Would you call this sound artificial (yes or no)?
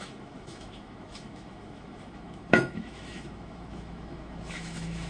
yes